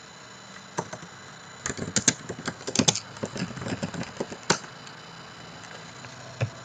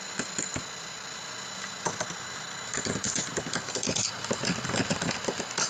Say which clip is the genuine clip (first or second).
first